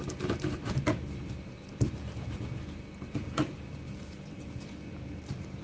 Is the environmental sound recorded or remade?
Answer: remade